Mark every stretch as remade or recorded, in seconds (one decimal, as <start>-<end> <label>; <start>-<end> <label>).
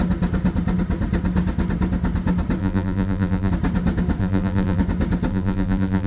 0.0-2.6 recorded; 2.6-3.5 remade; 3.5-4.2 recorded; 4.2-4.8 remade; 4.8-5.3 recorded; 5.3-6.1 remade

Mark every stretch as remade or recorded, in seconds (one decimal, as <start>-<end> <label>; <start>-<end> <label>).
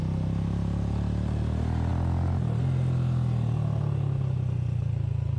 0.0-5.4 recorded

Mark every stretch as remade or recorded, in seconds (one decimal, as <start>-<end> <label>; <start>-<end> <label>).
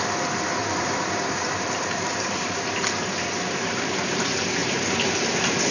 0.0-0.6 recorded; 0.6-3.8 remade; 3.8-5.7 recorded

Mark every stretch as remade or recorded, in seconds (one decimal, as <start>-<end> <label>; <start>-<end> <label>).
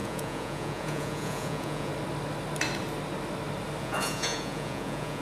0.0-1.9 remade; 1.9-3.8 recorded; 3.8-5.2 remade